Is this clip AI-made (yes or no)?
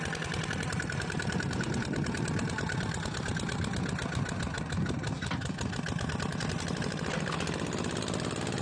no